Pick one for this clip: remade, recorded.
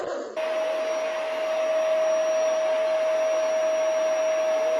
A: recorded